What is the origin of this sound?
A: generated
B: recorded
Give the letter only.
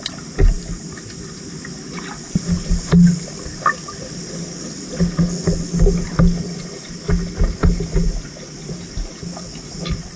B